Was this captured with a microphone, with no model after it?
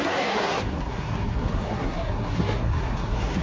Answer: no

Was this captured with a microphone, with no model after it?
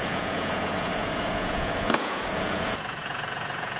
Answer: no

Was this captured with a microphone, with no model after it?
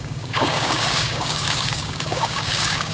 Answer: no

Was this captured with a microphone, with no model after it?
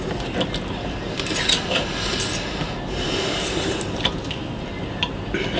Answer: yes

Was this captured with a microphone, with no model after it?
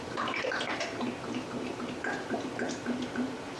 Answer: no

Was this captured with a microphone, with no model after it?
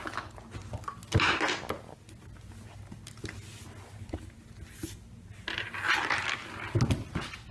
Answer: yes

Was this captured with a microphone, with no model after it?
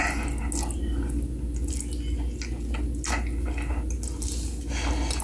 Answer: yes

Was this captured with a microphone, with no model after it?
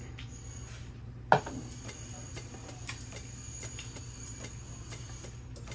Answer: yes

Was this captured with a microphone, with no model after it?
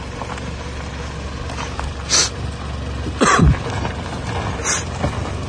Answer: yes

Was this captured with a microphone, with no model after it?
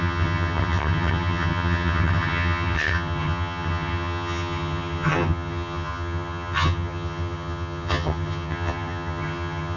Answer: no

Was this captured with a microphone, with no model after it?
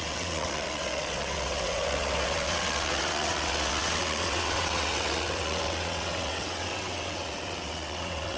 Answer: no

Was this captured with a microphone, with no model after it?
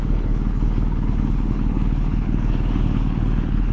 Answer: no